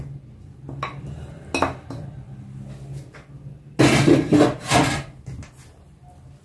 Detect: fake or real real